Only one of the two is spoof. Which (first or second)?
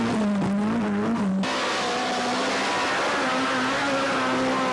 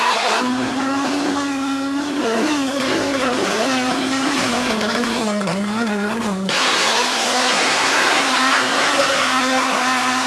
second